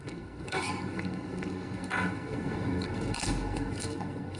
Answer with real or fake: fake